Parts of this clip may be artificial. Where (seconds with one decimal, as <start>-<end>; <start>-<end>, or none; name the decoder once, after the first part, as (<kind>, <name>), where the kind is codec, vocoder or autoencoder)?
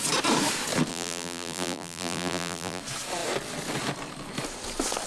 0.9-2.8 (vocoder, BigVGAN v2)